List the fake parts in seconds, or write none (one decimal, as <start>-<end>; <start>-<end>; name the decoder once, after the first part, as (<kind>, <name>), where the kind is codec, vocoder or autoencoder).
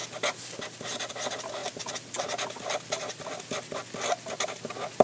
none